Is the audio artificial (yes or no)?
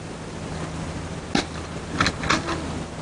no